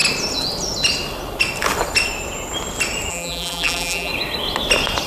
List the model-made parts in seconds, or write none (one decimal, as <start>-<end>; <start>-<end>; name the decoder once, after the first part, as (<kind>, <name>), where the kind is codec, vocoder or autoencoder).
3.1-4.1 (vocoder, BigVGAN v2)